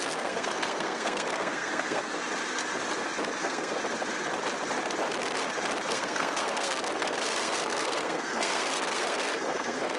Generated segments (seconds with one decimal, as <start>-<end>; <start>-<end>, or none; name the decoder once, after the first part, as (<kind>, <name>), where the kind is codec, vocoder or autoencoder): 0.0-2.2 (codec, SNAC); 3.4-3.8; 5.9-10.0